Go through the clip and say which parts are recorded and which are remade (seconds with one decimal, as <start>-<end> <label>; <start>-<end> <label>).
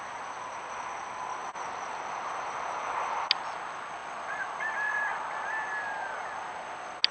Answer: 0.0-1.4 recorded; 1.4-3.3 remade; 3.3-7.1 recorded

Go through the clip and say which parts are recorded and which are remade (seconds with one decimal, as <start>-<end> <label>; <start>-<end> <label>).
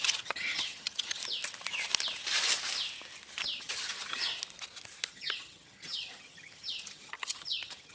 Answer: 0.0-1.2 remade; 1.2-3.6 recorded; 3.6-4.3 remade; 4.3-5.1 recorded; 5.1-7.9 remade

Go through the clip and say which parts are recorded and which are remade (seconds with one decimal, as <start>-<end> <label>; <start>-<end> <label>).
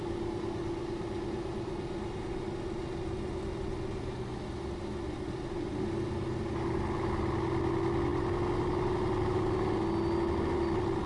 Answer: 0.0-11.1 recorded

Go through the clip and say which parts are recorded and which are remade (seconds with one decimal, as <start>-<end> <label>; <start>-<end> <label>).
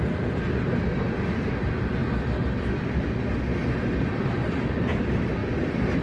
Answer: 0.0-6.0 recorded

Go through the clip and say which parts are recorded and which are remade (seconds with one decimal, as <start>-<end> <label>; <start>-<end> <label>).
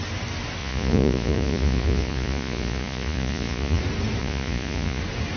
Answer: 0.0-0.6 recorded; 0.6-3.8 remade; 3.8-4.2 recorded; 4.2-5.0 remade; 5.0-5.4 recorded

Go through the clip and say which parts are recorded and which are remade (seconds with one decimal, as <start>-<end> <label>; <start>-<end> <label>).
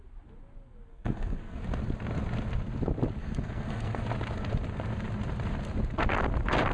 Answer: 0.0-0.9 recorded; 0.9-1.6 remade; 1.6-3.2 recorded; 3.2-4.0 remade; 4.0-6.7 recorded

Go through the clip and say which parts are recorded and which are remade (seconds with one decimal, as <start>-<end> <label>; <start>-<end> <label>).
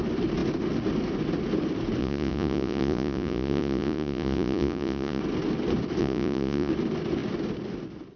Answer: 0.0-2.0 recorded; 2.0-5.2 remade; 5.2-6.0 recorded; 6.0-6.7 remade; 6.7-8.2 recorded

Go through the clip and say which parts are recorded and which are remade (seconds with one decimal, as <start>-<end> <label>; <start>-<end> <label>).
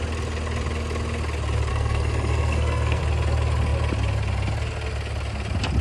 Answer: 0.0-1.7 recorded; 1.7-3.0 remade; 3.0-5.8 recorded